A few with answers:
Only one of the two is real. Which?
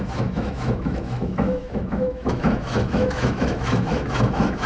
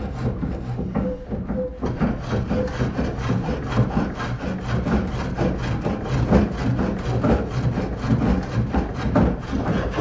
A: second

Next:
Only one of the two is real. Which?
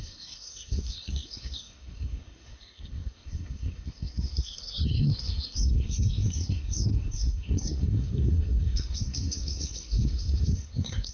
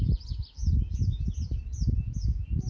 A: second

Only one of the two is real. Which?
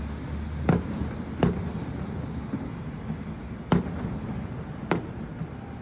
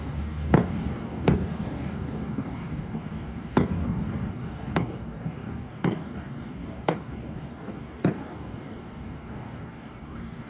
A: first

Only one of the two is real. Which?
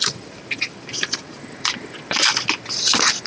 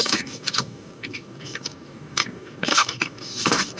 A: first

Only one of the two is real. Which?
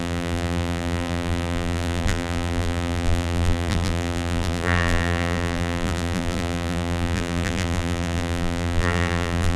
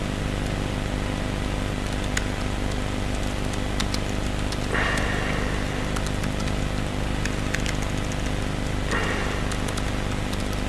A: second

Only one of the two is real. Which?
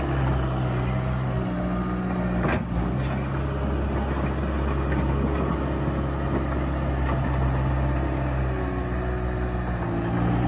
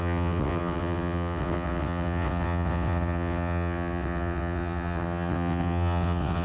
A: first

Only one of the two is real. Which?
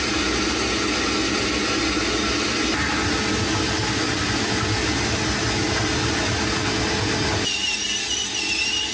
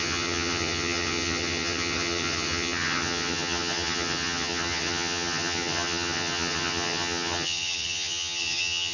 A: first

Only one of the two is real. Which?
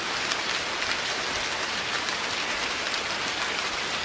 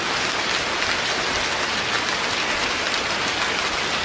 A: second